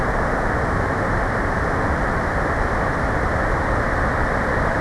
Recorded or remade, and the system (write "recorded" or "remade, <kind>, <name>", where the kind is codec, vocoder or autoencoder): recorded